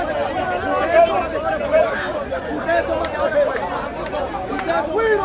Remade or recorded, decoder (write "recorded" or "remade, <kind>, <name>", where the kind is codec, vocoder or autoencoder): recorded